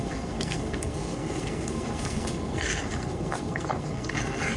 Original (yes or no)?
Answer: no